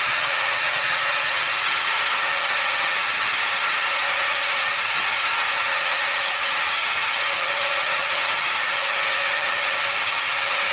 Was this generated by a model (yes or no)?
yes